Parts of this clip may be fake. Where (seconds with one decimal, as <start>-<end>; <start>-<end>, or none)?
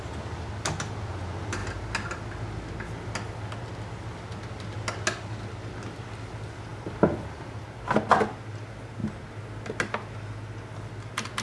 none